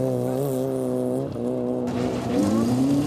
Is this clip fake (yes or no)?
no